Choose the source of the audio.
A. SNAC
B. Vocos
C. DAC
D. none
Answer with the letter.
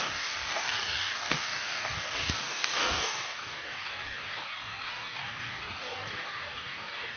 C